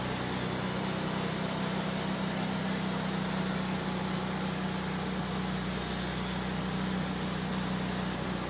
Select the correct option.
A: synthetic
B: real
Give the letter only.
B